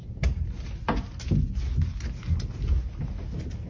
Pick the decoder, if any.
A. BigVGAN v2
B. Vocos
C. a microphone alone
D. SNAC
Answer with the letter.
C